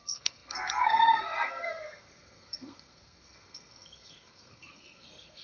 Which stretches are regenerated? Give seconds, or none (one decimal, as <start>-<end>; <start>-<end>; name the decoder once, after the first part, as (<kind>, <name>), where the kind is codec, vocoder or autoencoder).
0.0-5.4 (codec, SNAC)